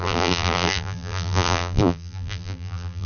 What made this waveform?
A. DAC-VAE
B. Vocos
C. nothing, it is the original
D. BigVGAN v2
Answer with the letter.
D